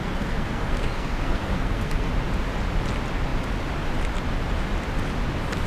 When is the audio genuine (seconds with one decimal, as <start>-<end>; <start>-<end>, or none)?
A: 2.1-5.7